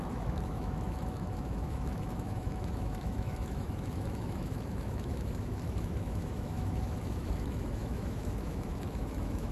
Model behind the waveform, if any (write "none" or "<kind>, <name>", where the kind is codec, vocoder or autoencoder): autoencoder, DAC-VAE